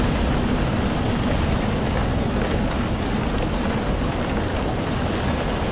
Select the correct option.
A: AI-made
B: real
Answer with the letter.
B